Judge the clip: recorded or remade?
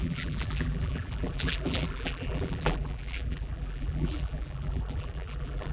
remade